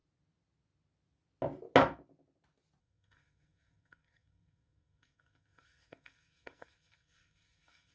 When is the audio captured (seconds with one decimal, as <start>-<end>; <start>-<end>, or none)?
0.0-2.8

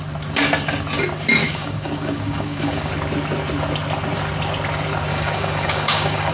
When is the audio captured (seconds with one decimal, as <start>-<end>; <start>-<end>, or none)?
0.0-1.4; 2.9-5.1

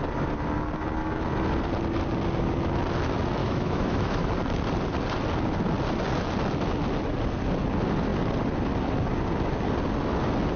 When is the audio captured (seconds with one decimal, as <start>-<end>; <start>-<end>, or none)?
0.0-3.4; 4.3-10.6